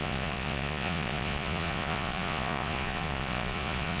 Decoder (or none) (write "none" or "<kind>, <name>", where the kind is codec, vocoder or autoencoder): vocoder, Vocos